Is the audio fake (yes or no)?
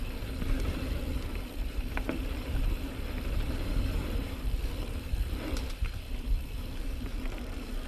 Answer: yes